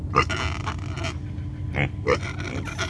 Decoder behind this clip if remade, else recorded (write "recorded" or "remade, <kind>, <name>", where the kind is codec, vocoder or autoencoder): recorded